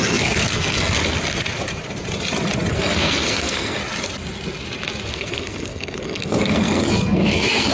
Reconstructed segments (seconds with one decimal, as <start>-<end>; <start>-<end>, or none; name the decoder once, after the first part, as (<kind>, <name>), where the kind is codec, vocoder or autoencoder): 0.0-1.0 (codec, SNAC); 2.7-3.8; 5.1-7.7